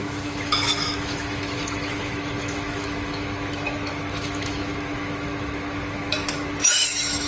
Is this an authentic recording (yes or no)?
no